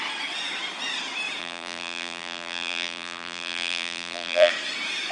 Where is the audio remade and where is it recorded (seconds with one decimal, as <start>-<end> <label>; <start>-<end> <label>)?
0.0-1.4 recorded; 1.4-4.5 remade; 4.5-5.1 recorded